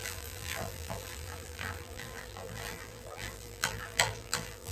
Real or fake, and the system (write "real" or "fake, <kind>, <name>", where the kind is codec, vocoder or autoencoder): fake, vocoder, BigVGAN v2